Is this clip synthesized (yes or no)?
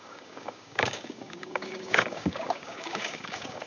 yes